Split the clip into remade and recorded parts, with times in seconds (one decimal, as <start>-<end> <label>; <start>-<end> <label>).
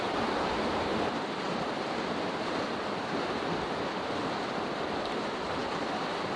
0.0-6.4 remade